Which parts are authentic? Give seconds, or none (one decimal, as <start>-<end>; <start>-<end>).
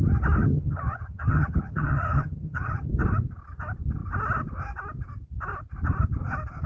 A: 0.0-0.4; 2.9-6.7